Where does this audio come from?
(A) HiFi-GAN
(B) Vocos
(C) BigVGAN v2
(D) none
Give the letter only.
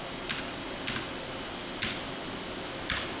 D